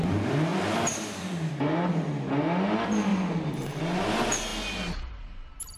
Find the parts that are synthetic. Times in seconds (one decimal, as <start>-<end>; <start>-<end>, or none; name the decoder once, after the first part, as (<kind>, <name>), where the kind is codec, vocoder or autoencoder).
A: 0.5-1.5 (vocoder, BigVGAN v2); 3.1-3.8